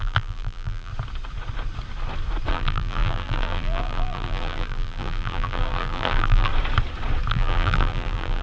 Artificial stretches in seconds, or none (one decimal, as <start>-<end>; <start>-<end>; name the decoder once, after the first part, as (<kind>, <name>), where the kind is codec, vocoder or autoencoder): 0.0-0.9 (vocoder, BigVGAN v2); 2.5-6.5; 7.3-8.4